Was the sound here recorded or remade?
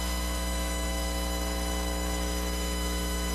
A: remade